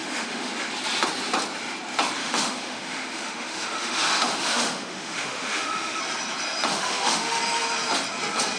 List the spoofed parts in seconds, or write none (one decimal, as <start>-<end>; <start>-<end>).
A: 0.0-0.5; 2.2-6.0; 6.7-7.4

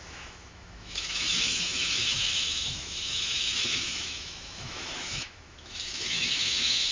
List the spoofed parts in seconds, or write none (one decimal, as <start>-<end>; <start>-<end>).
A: 0.0-6.9